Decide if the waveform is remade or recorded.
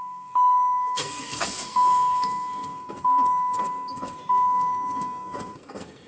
remade